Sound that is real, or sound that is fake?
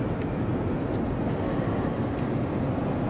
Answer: real